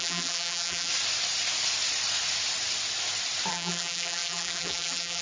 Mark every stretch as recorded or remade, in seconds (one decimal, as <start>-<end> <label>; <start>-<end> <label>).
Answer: 0.0-0.9 remade; 0.9-3.5 recorded; 3.5-5.2 remade